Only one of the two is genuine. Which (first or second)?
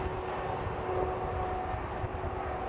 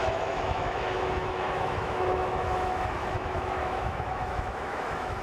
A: first